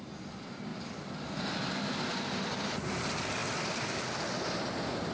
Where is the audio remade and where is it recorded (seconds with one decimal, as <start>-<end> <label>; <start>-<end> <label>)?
0.0-5.1 recorded